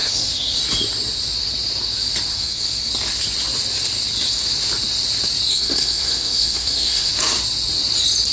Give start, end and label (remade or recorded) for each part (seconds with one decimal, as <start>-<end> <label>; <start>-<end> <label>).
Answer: 0.0-0.6 remade; 0.6-2.3 recorded; 2.3-2.9 remade; 2.9-5.5 recorded; 5.5-7.1 remade; 7.1-8.3 recorded